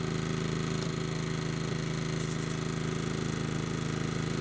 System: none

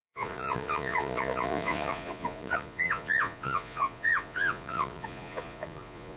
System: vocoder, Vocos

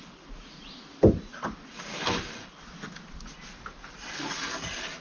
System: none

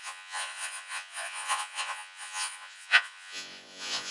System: vocoder, Vocos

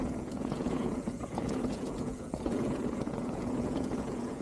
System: vocoder, Vocos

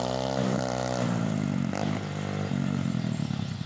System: none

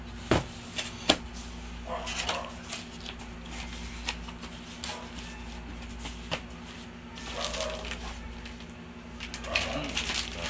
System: none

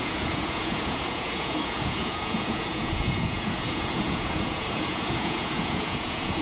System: vocoder, Vocos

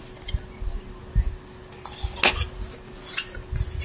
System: none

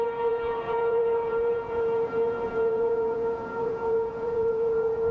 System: vocoder, Vocos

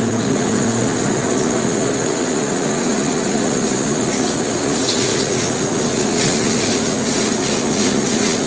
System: vocoder, Vocos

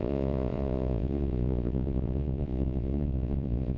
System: vocoder, Vocos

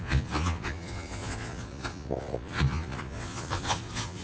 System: vocoder, Vocos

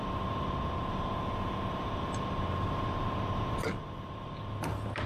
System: none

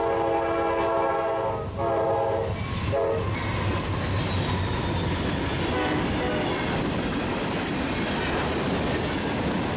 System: none